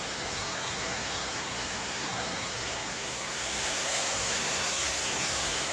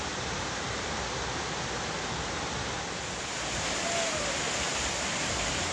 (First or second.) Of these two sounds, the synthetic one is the first